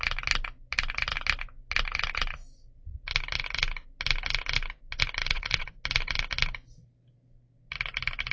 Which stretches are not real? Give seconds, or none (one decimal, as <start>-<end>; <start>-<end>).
5.2-5.7